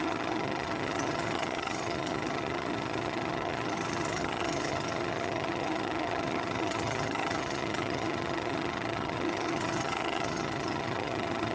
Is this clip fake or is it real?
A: fake